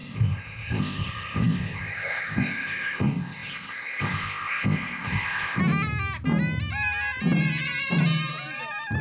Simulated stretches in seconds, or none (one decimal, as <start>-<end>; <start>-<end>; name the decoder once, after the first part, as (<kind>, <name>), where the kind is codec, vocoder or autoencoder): 0.0-5.6 (codec, ZipCodec)